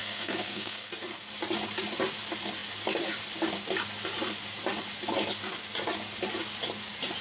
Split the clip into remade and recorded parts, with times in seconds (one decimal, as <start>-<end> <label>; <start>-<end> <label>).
0.0-0.9 remade; 0.9-7.2 recorded